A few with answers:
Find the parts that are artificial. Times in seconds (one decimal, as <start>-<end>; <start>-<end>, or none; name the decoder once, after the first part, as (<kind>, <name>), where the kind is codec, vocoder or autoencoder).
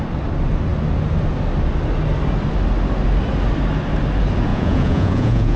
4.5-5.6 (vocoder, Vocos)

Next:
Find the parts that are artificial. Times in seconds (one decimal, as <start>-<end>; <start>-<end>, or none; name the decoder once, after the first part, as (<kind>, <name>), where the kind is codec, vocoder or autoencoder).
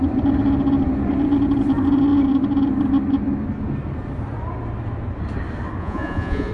5.8-6.5 (vocoder, Vocos)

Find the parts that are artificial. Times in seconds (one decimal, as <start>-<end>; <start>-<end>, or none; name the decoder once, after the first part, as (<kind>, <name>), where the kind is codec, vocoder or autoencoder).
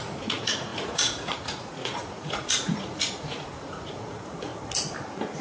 0.0-4.5 (vocoder, Vocos)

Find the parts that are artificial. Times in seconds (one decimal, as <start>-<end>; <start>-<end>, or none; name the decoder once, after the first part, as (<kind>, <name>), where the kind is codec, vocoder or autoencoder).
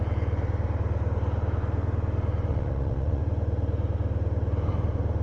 2.5-3.2 (vocoder, Vocos)